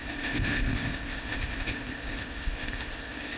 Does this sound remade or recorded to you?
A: remade